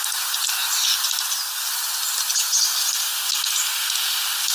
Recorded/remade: recorded